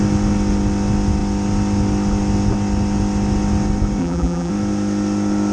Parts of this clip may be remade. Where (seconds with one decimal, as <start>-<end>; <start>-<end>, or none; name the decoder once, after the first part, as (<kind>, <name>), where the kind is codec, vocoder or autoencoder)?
4.0-4.5 (vocoder, BigVGAN v2)